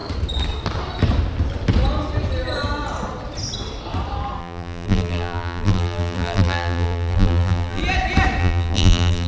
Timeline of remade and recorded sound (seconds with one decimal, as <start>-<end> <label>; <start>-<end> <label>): 0.0-4.4 recorded; 4.4-7.8 remade; 7.8-8.4 recorded; 8.4-9.3 remade